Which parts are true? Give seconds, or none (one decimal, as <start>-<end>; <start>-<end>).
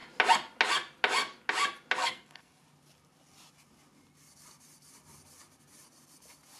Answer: 0.0-2.0; 2.6-6.6